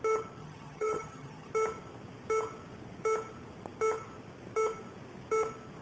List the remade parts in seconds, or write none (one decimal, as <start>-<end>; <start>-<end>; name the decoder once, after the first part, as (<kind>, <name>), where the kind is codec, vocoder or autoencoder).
0.4-1.5 (vocoder, HiFi-GAN)